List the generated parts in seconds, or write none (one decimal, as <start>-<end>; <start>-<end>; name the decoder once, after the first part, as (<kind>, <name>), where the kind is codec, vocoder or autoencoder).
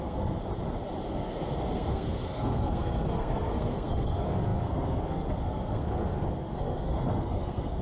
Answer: 0.0-0.4 (codec, SNAC); 1.1-7.8